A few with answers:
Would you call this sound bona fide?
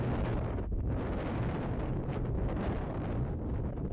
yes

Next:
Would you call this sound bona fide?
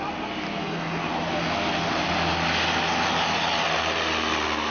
yes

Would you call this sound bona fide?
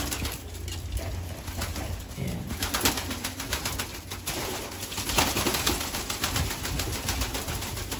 yes